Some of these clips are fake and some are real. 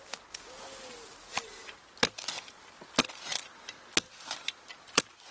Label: real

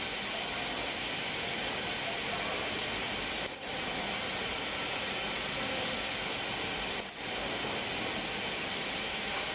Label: real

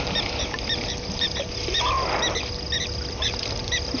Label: real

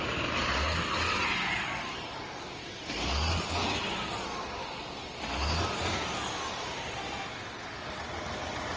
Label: real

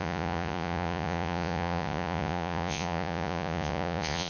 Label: fake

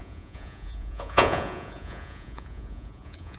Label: fake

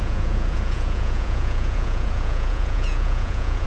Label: fake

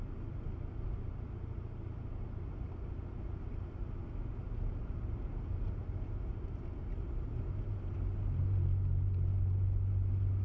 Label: real